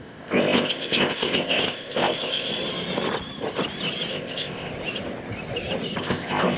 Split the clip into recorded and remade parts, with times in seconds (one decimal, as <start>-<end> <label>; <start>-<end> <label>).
0.0-2.5 remade; 2.5-4.1 recorded; 4.1-4.7 remade; 4.7-6.0 recorded; 6.0-6.6 remade